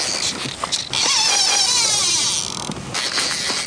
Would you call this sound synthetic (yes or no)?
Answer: no